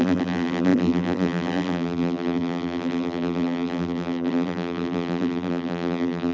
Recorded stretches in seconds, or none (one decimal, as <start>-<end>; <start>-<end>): none